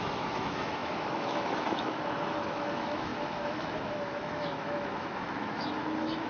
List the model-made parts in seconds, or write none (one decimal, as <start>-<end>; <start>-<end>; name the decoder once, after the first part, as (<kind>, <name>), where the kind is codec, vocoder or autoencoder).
0.0-6.3 (autoencoder, DAC-VAE)